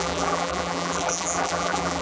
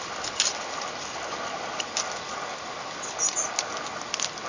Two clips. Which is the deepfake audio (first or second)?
first